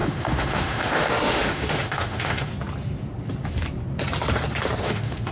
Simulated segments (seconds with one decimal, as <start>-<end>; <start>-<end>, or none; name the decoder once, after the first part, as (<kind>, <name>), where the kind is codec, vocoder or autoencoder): 0.0-2.5 (autoencoder, DAC-VAE); 4.8-5.3